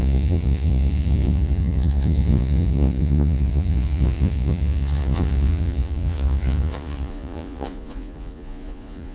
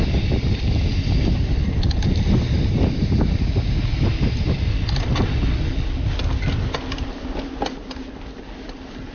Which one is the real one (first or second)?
second